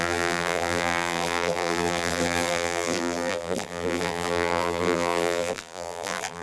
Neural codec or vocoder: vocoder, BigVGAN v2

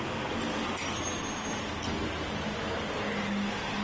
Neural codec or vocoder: none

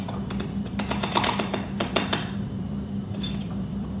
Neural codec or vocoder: vocoder, BigVGAN v2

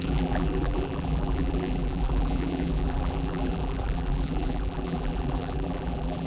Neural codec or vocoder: vocoder, BigVGAN v2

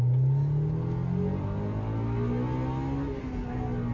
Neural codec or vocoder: none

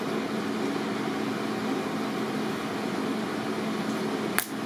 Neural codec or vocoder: none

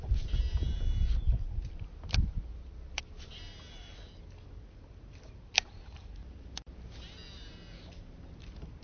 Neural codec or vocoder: none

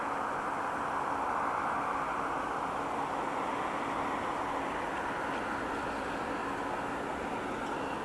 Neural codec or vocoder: none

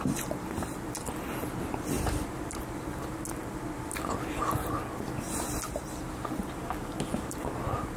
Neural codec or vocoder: none